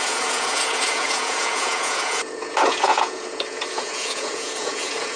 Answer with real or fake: fake